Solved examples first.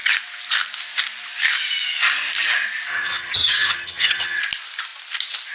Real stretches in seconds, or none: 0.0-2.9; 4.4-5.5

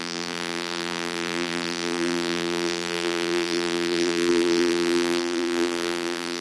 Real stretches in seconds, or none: none

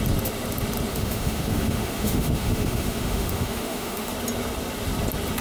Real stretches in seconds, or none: 0.0-0.9; 4.1-5.4

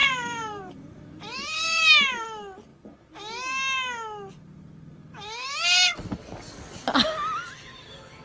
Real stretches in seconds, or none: 1.9-8.2

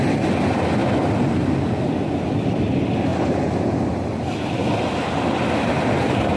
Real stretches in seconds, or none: 0.0-6.4

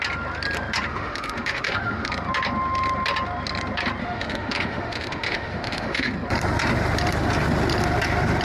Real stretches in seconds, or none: 0.0-0.9; 2.1-4.0; 6.1-8.4